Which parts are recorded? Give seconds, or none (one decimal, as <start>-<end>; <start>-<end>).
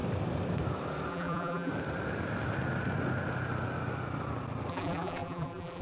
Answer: 0.0-1.1; 1.7-4.7